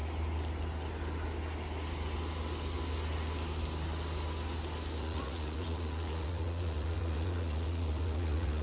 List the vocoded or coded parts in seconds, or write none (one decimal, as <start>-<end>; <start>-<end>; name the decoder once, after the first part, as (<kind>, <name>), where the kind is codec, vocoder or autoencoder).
5.0-8.6 (vocoder, Vocos)